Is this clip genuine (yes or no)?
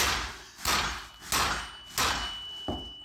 yes